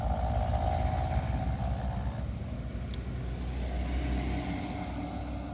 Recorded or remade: recorded